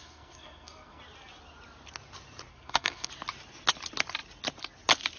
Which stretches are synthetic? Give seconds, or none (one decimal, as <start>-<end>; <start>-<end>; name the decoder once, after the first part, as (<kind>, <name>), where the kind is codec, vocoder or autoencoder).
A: 0.0-1.0 (codec, SNAC); 2.5-3.1